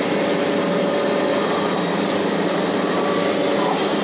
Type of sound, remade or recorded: recorded